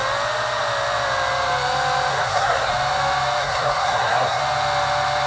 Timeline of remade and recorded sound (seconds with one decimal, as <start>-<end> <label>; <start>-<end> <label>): 0.0-2.1 recorded; 2.1-2.7 remade; 2.7-3.4 recorded; 3.4-4.4 remade; 4.4-5.3 recorded